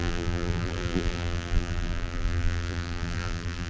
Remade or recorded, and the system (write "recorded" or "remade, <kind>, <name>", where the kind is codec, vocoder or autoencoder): remade, vocoder, BigVGAN v2